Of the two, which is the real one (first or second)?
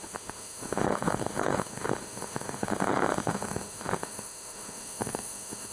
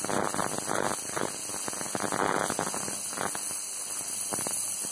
second